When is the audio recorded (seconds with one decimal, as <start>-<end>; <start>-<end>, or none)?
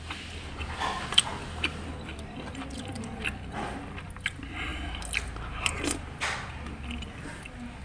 0.0-7.8